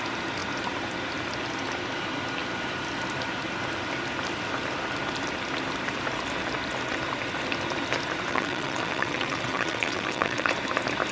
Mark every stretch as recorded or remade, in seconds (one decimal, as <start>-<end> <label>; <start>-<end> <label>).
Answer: 0.0-8.3 recorded; 8.3-10.5 remade; 10.5-11.1 recorded